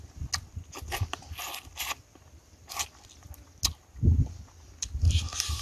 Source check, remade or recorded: recorded